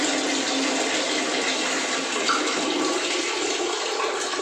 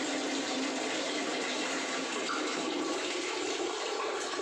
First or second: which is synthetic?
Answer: second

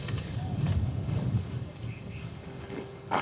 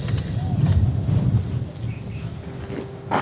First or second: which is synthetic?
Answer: first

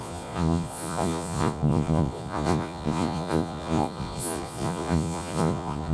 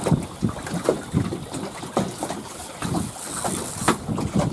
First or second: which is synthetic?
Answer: first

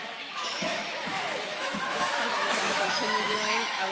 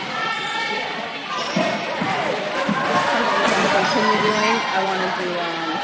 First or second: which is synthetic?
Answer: first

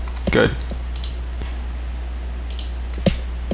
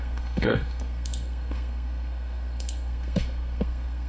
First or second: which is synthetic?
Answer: second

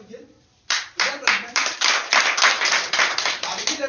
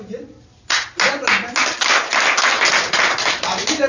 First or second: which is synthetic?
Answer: first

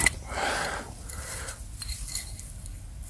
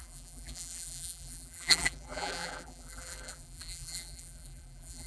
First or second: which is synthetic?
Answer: second